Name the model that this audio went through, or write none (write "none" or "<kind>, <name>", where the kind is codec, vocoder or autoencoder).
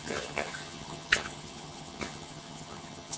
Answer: vocoder, HiFi-GAN